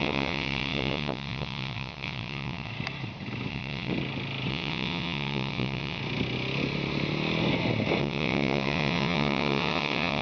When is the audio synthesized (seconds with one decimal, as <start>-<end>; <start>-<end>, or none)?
0.0-2.7; 3.5-3.9; 4.5-6.0; 8.0-10.2